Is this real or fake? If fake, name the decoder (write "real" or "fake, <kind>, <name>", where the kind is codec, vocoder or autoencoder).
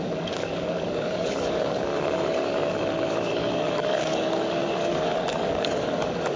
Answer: fake, codec, DAC